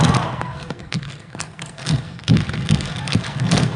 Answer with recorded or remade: remade